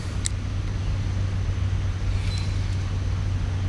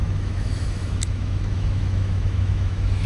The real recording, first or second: first